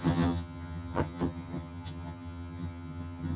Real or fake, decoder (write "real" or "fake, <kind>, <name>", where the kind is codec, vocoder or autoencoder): fake, vocoder, HiFi-GAN